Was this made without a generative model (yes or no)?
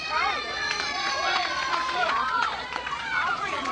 no